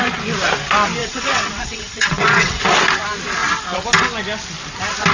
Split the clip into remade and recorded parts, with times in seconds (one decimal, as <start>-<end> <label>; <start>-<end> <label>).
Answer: 0.0-1.0 recorded; 1.0-2.6 remade; 2.6-5.1 recorded